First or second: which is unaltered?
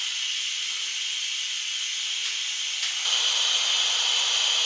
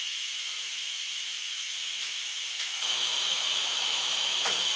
first